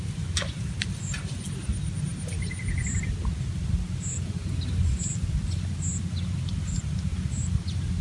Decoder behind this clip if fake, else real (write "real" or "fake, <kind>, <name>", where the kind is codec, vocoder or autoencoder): real